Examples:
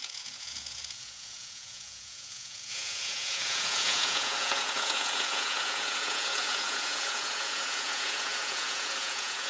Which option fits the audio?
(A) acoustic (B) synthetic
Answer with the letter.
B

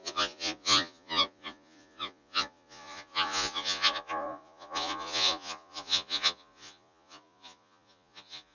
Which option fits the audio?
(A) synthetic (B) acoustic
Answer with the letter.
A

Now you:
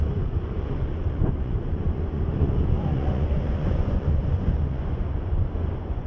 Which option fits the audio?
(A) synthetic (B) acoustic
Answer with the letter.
A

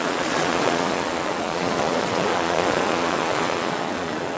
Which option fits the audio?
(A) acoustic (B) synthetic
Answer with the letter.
B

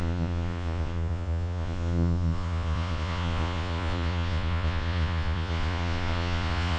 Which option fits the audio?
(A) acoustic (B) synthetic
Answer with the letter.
B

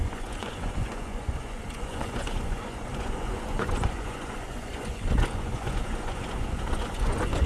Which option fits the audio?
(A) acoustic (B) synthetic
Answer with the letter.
B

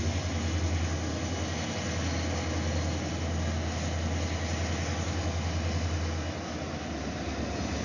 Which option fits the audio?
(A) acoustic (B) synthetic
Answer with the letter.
A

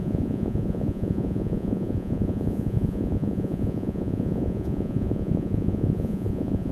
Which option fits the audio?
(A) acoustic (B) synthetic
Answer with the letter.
B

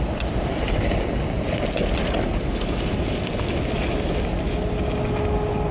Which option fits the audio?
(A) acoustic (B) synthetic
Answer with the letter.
A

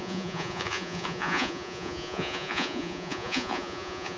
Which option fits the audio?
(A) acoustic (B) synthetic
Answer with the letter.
B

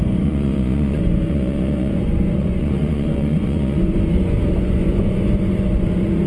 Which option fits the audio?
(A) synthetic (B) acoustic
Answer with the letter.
A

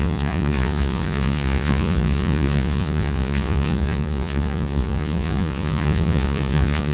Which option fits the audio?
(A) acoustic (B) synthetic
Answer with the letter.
B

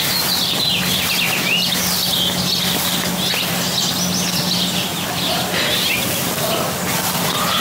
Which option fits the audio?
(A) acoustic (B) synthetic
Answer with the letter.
A